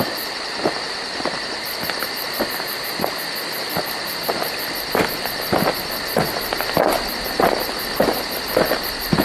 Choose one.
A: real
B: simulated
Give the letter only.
A